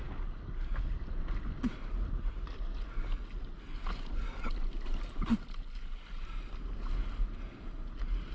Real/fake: real